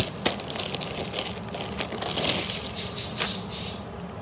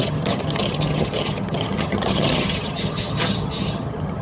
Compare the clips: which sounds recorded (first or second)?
first